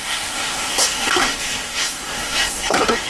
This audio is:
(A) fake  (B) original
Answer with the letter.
A